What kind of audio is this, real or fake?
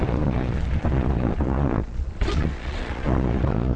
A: fake